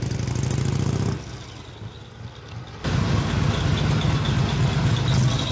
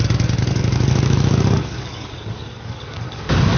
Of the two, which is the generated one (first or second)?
second